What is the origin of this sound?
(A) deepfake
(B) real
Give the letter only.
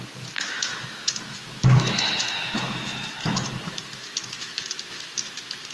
A